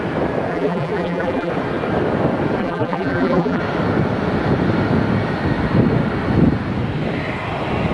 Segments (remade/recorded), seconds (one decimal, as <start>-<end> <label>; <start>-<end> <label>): 0.0-0.5 recorded; 0.5-1.5 remade; 1.5-2.6 recorded; 2.6-3.6 remade; 3.6-7.9 recorded